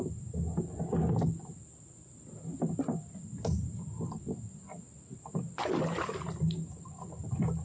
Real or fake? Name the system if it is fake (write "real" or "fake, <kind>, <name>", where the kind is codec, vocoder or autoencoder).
real